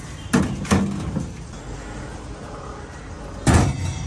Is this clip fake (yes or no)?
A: no